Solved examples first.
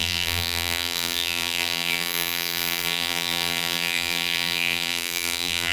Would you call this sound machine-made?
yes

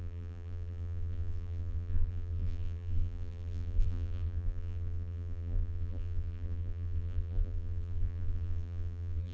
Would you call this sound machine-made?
yes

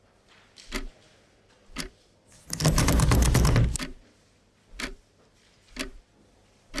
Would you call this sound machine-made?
no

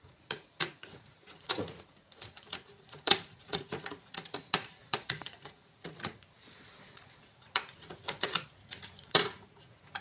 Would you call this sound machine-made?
yes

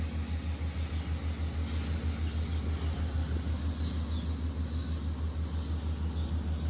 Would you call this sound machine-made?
no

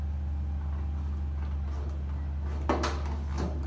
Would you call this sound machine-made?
no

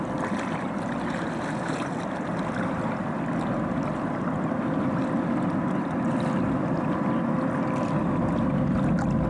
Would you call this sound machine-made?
no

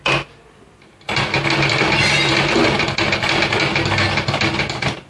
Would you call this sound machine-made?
no